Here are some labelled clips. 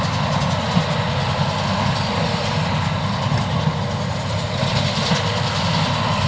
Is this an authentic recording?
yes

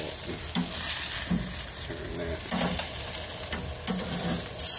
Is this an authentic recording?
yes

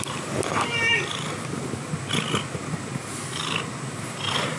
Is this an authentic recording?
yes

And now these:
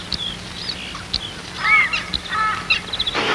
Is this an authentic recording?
yes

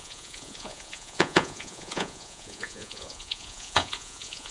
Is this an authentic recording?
no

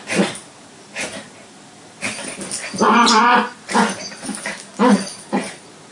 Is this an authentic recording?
yes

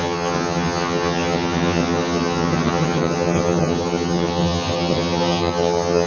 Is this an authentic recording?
no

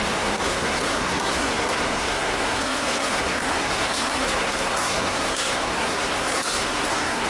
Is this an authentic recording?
no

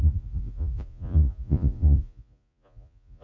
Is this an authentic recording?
no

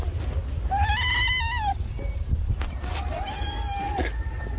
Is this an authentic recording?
yes